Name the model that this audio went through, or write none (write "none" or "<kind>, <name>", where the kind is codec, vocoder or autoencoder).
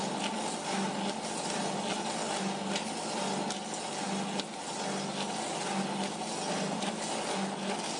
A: none